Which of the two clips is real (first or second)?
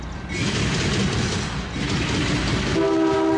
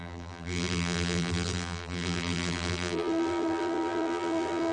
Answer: first